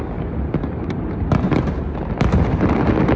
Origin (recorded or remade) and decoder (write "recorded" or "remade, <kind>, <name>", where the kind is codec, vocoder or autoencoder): recorded